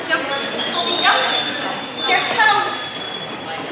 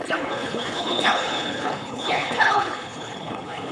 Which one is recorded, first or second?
first